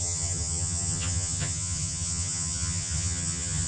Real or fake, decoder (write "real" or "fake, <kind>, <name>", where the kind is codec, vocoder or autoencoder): fake, vocoder, HiFi-GAN